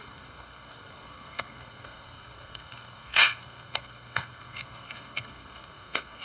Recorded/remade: remade